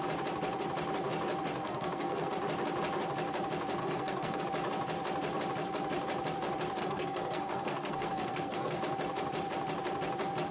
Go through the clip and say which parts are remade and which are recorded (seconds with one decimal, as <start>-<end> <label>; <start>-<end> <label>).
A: 0.0-1.6 recorded; 1.6-2.3 remade; 2.3-3.8 recorded; 3.8-4.4 remade; 4.4-6.8 recorded; 6.8-8.8 remade; 8.8-10.5 recorded